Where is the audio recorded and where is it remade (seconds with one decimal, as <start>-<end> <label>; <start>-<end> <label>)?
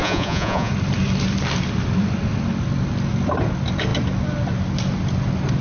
0.0-0.7 remade; 0.7-5.6 recorded